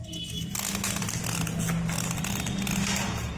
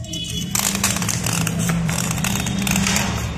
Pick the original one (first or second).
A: first